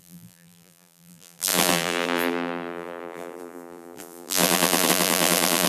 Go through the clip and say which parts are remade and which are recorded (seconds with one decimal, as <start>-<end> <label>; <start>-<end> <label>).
0.0-5.7 remade